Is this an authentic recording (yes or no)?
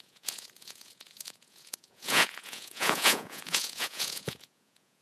no